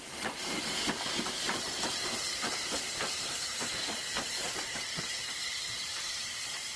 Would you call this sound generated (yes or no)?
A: yes